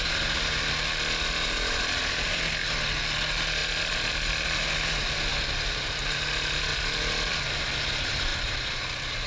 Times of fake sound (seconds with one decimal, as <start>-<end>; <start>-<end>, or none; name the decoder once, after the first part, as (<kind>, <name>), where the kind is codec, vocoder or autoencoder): 3.6-4.7 (vocoder, BigVGAN v2); 5.3-6.0; 6.7-7.4; 8.3-9.3